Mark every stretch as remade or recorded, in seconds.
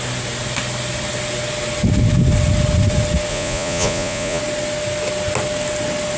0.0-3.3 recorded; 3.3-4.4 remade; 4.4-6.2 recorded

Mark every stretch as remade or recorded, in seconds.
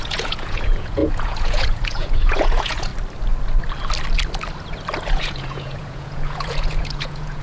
0.0-2.9 remade; 2.9-5.1 recorded; 5.1-7.4 remade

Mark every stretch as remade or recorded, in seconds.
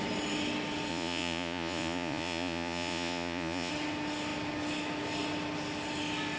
0.0-0.9 recorded; 0.9-3.7 remade; 3.7-6.4 recorded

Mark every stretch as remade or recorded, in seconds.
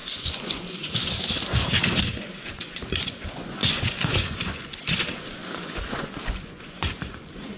0.0-7.6 remade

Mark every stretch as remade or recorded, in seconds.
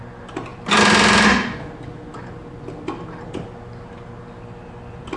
0.0-5.2 recorded